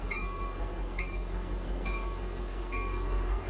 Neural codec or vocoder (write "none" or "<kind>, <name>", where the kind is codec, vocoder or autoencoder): codec, SNAC